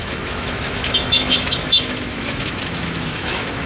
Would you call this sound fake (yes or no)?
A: yes